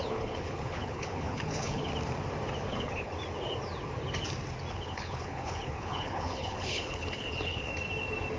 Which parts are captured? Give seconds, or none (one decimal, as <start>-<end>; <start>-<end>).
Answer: 1.9-2.7; 3.1-4.7; 7.7-8.4